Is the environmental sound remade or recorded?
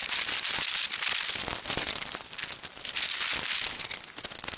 recorded